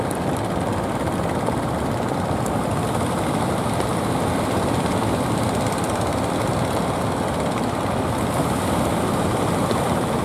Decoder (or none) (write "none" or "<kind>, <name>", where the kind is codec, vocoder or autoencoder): none